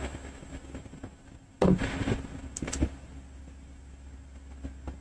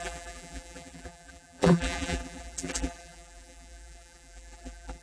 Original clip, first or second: first